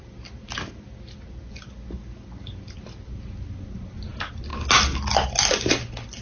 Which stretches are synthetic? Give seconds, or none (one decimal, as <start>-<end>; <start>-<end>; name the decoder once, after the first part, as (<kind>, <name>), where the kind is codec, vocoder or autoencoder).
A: none